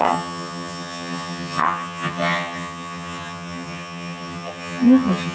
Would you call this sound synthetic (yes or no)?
yes